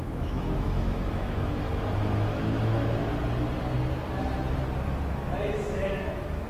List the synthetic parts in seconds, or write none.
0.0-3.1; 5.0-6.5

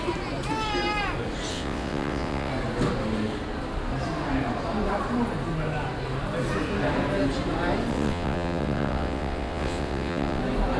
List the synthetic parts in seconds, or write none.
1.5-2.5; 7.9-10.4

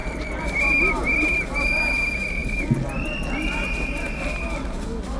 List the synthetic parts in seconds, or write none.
none

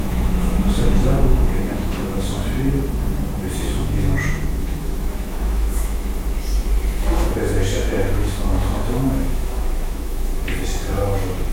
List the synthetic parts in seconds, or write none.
0.0-2.4; 3.7-6.1; 7.0-10.3

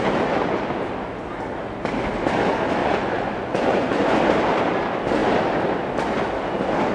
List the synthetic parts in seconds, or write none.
2.8-4.2

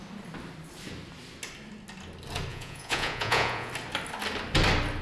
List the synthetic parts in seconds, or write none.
2.5-3.7